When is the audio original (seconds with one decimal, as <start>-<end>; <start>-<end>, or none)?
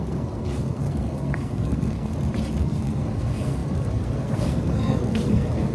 2.1-2.6